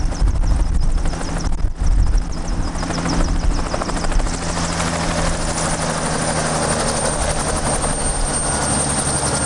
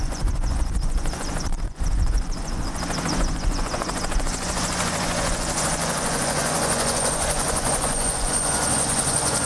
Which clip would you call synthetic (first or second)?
second